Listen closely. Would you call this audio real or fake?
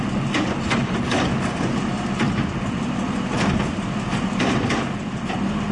fake